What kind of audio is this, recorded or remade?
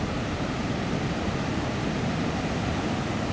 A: recorded